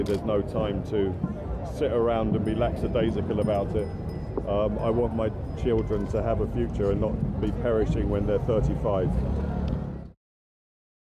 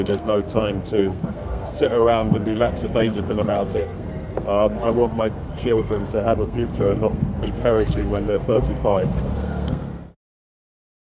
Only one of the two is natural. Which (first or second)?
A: first